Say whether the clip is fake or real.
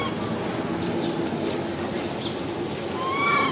real